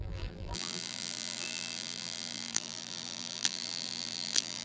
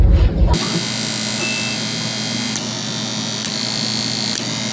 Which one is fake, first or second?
first